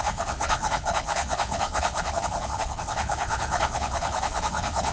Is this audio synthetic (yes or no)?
yes